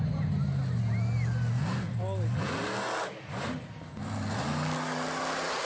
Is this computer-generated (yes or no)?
no